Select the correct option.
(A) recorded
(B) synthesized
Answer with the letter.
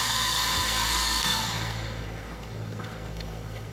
B